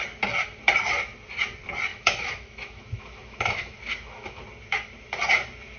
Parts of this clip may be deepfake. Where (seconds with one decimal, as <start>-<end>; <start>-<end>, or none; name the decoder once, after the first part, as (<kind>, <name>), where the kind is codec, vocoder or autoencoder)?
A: 1.9-4.4 (autoencoder, DAC-VAE)